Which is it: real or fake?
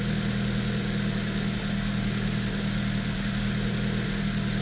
real